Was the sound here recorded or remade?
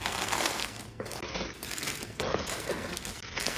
remade